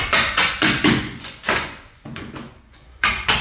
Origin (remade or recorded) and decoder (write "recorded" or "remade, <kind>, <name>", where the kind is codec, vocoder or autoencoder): remade, vocoder, Vocos